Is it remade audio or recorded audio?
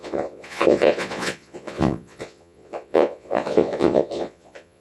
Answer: remade